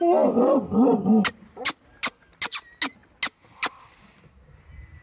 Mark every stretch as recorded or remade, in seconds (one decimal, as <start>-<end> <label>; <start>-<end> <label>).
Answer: 0.0-5.0 recorded